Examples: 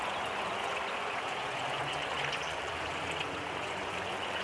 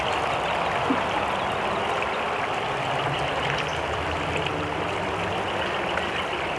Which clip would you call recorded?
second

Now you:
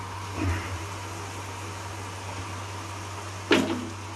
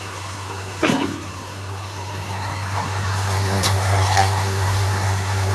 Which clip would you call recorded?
first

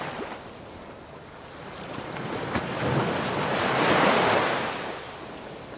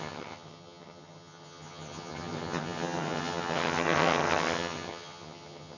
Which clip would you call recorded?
first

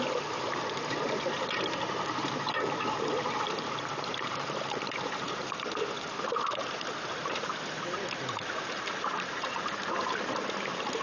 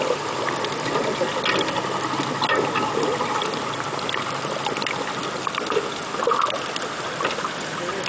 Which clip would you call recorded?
second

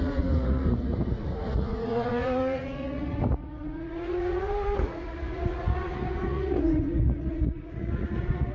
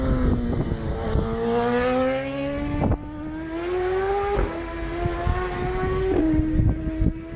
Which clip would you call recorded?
second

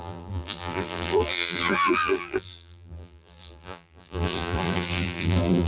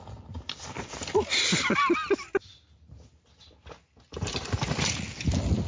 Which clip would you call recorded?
second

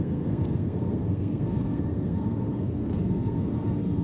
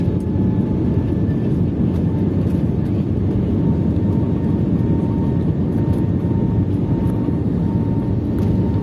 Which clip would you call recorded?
second